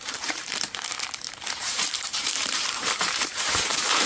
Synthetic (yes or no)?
yes